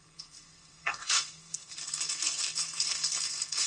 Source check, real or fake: fake